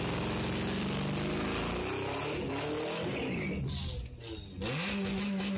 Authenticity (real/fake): real